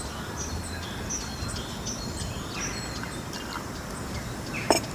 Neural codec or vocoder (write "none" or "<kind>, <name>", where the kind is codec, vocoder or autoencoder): none